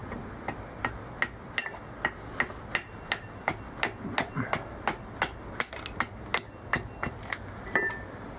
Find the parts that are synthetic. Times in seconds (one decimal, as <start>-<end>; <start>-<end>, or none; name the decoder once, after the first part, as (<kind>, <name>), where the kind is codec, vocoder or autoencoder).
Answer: none